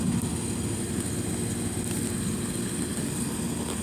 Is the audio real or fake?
real